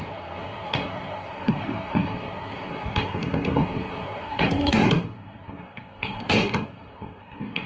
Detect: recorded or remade remade